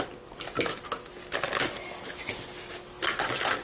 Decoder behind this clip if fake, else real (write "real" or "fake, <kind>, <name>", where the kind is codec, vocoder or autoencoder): real